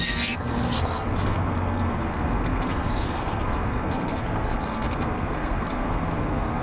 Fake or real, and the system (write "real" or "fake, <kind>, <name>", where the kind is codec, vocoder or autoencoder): fake, codec, SNAC